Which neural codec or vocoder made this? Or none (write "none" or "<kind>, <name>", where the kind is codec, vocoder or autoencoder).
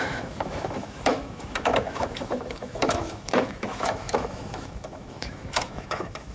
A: autoencoder, DAC-VAE